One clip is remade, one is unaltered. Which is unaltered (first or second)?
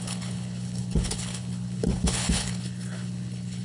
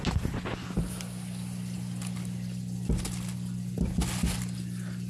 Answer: second